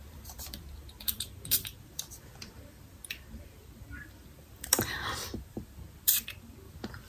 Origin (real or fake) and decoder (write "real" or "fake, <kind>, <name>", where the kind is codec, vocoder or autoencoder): fake, vocoder, BigVGAN v2